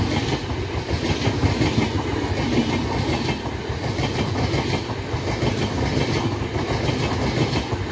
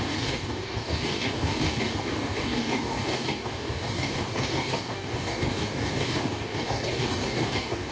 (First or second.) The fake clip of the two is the second